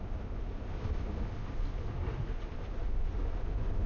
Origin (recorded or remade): recorded